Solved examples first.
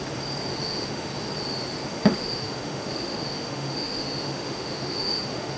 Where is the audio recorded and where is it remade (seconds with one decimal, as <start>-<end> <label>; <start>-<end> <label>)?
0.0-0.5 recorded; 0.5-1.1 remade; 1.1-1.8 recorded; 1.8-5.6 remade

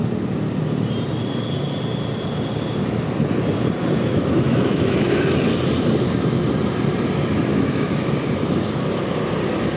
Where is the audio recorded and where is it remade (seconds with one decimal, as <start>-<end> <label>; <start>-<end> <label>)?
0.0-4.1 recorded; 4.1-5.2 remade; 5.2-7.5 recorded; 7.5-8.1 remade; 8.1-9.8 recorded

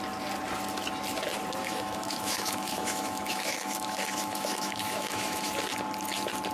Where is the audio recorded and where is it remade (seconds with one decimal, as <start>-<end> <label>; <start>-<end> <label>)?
0.0-1.6 recorded; 1.6-5.5 remade; 5.5-6.5 recorded

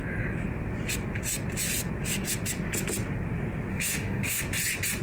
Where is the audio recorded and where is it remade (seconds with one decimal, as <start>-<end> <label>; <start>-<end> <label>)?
0.0-3.7 recorded; 3.7-4.4 remade; 4.4-5.0 recorded